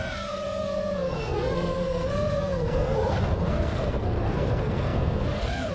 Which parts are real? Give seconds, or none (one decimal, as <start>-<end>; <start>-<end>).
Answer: none